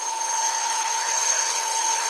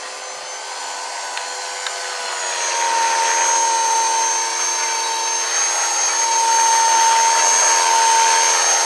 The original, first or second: second